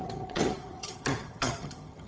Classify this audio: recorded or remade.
remade